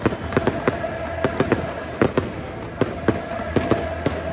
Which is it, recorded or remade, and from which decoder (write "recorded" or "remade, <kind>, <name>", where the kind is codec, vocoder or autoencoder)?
recorded